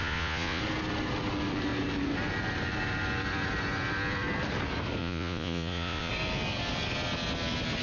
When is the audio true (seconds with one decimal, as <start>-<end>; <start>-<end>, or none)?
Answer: 0.6-5.0; 6.1-7.8